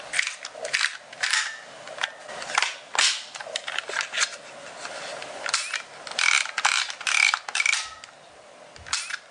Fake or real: real